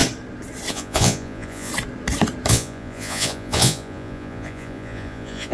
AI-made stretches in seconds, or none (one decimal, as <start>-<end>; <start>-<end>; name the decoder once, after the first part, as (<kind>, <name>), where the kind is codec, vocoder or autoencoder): 0.7-1.7 (vocoder, Vocos); 2.5-5.5